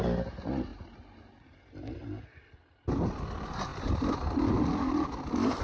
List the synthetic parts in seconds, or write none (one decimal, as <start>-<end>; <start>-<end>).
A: none